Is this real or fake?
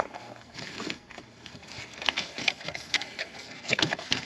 fake